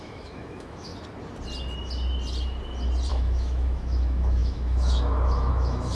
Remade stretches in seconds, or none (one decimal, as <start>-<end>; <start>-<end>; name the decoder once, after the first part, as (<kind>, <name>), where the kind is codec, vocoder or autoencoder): 0.0-0.9 (autoencoder, DAC-VAE); 3.1-5.9